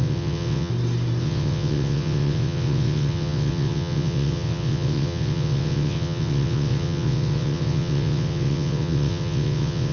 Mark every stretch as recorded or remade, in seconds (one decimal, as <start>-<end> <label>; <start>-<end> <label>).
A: 0.0-0.7 remade; 0.7-1.2 recorded; 1.2-9.9 remade